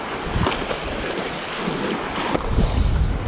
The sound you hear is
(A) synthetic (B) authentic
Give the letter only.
B